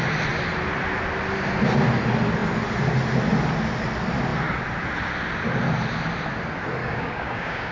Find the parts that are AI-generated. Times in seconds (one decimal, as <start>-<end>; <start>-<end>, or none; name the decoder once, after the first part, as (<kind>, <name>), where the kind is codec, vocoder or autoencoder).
6.8-7.7 (codec, DAC)